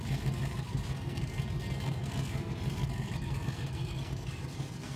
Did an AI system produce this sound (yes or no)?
yes